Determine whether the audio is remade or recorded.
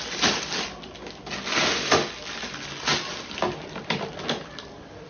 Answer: recorded